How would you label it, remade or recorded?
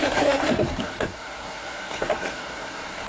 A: remade